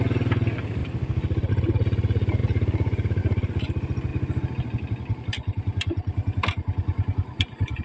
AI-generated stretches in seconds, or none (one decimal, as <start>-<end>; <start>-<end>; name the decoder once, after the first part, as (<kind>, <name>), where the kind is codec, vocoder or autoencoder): none